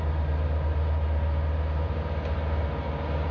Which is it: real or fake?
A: real